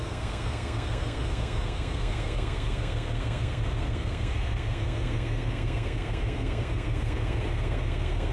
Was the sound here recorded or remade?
remade